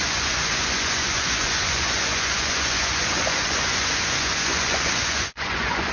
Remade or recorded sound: remade